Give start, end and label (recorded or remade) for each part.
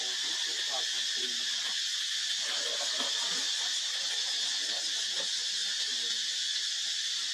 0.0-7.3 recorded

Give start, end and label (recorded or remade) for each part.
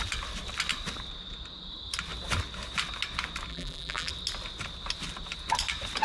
0.0-3.5 recorded; 3.5-4.1 remade; 4.1-6.0 recorded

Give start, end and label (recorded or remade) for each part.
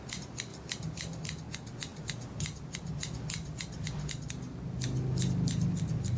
0.0-0.5 recorded; 0.5-1.2 remade; 1.2-1.9 recorded; 1.9-2.9 remade; 2.9-6.2 recorded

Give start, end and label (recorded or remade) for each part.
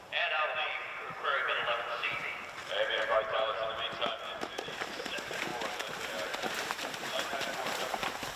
0.0-5.5 remade; 5.5-6.1 recorded; 6.1-8.4 remade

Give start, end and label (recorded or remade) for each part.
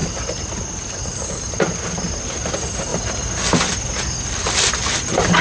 0.0-5.4 recorded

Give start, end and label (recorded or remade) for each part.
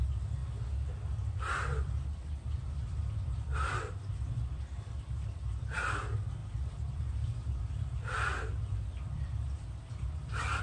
0.0-0.4 recorded; 0.4-4.9 remade; 4.9-6.4 recorded; 6.4-10.6 remade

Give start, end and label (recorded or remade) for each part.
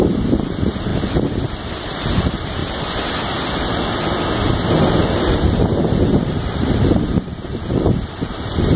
0.0-0.9 remade; 0.9-1.9 recorded; 1.9-2.6 remade; 2.6-5.2 recorded; 5.2-8.8 remade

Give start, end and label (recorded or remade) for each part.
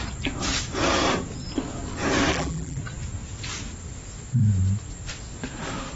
0.0-2.3 recorded; 2.3-2.8 remade; 2.8-6.0 recorded